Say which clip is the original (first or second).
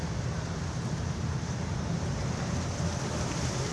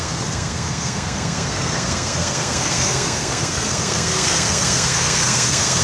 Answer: first